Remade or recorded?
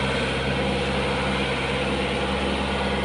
recorded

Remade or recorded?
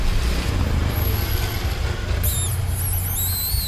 recorded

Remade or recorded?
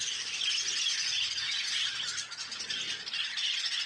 recorded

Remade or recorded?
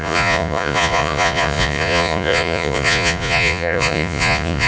remade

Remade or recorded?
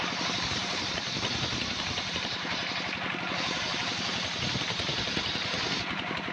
remade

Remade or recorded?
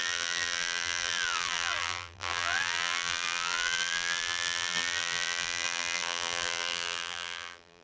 remade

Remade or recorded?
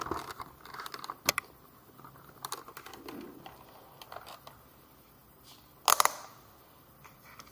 recorded